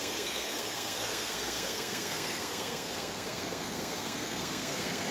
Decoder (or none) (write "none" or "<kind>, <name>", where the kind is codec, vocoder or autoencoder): codec, SNAC